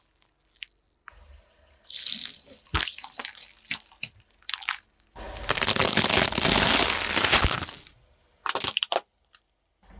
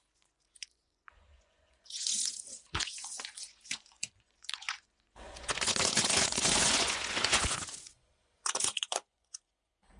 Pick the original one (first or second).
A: first